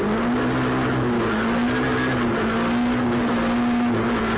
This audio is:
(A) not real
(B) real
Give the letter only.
B